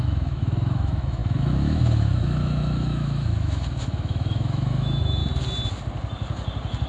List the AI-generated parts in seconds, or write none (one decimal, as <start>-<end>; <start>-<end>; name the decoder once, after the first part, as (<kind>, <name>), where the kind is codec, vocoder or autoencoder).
0.0-5.2 (autoencoder, DAC-VAE)